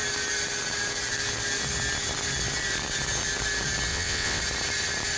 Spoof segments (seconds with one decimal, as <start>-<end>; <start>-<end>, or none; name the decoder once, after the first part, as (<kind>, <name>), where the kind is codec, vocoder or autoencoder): 3.9-4.4 (vocoder, WaveNeXt)

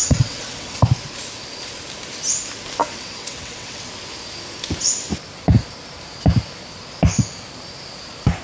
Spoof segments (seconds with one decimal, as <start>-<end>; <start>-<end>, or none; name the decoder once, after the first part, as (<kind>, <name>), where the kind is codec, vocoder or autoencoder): 0.0-0.8 (vocoder, WaveNeXt); 2.8-3.9

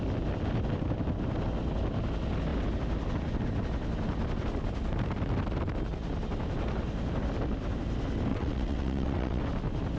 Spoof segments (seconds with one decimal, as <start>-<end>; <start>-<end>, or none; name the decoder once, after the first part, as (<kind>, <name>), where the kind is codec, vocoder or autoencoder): 8.3-9.4 (vocoder, WaveNeXt)

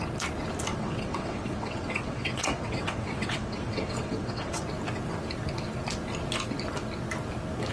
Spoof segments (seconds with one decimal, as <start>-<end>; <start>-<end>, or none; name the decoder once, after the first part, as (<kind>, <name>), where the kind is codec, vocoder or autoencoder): 0.7-4.6 (vocoder, WaveNeXt)